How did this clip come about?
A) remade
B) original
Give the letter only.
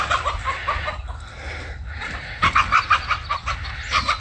B